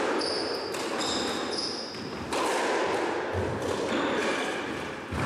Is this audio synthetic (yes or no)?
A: no